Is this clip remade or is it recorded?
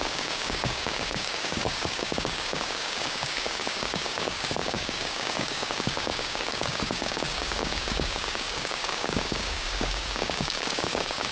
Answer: remade